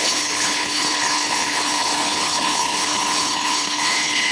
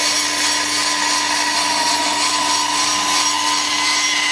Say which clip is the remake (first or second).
first